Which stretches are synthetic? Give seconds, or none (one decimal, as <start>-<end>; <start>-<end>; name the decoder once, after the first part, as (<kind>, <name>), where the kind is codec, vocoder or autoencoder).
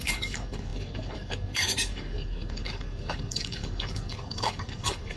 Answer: 0.0-5.2 (codec, DAC)